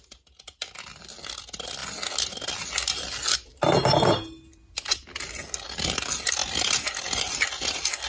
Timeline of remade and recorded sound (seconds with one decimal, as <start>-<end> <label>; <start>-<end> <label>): 0.0-8.1 recorded